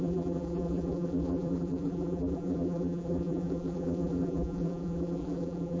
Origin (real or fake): fake